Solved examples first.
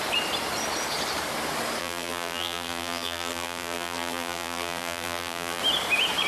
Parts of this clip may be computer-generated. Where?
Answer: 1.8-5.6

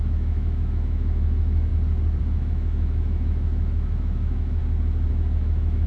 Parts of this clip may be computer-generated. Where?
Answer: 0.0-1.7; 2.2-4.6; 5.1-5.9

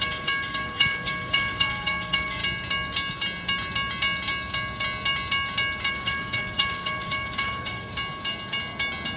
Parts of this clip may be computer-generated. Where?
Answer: 0.0-2.4; 5.9-7.9